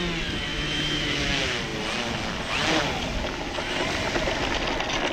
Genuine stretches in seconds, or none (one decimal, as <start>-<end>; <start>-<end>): 0.0-0.5; 1.2-5.1